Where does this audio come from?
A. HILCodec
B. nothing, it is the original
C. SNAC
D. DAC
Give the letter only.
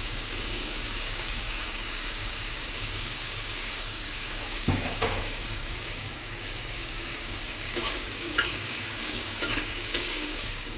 D